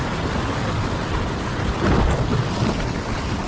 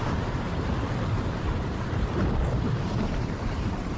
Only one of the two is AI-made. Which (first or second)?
second